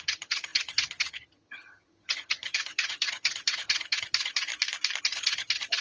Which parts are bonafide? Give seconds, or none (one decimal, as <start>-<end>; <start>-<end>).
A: 4.5-5.0